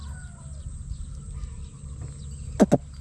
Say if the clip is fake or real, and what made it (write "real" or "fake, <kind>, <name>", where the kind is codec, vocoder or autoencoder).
real